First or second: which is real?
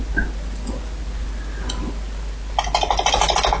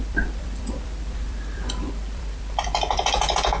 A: first